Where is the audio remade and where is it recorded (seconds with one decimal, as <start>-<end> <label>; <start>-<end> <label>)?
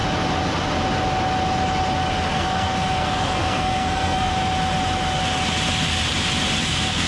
0.0-2.3 recorded; 2.3-4.3 remade; 4.3-6.6 recorded; 6.6-7.1 remade